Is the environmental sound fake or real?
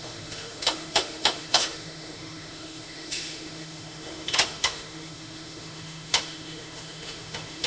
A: fake